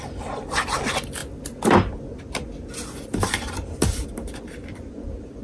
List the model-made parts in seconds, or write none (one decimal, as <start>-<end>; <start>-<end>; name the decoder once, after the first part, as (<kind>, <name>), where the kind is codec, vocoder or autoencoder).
none